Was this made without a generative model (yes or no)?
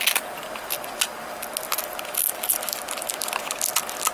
yes